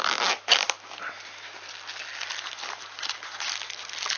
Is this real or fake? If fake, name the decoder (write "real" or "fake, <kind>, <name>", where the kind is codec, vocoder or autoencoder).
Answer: real